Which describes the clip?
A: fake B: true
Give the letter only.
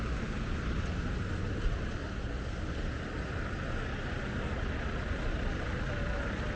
B